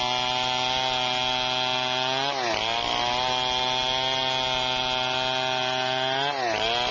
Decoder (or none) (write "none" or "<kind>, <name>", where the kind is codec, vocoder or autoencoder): none